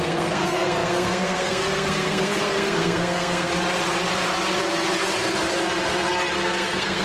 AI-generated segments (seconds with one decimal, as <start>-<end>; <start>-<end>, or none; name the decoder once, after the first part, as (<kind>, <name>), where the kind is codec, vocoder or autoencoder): 0.0-3.5 (codec, SNAC); 6.4-7.0